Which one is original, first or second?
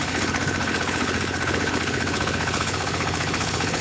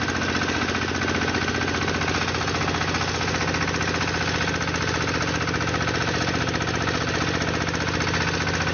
second